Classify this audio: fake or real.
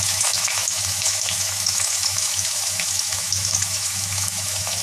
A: fake